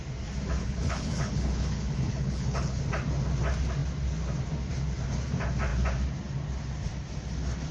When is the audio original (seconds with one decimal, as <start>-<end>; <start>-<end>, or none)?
0.0-0.6; 2.8-7.7